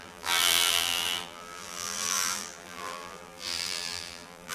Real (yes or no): no